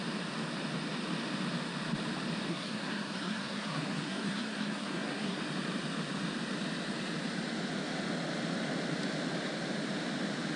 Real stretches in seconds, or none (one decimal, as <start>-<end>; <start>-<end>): 0.0-2.5; 5.4-10.6